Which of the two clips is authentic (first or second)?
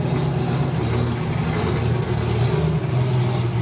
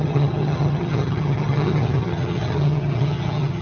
first